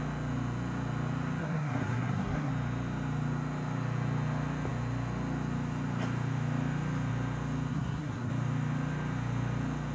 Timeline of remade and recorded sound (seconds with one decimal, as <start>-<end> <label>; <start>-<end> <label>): 0.0-1.4 recorded; 1.4-2.5 remade; 2.5-7.7 recorded; 7.7-8.3 remade; 8.3-9.9 recorded